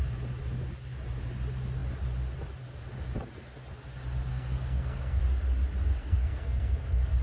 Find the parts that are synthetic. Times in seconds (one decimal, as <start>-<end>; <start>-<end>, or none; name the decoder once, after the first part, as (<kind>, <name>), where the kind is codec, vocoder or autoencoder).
4.3-5.2 (codec, SNAC); 6.0-7.2